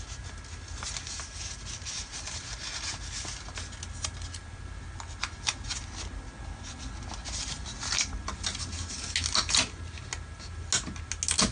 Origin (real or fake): real